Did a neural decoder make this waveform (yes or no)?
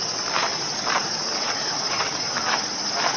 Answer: no